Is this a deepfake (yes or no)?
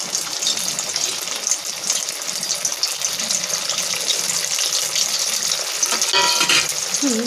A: no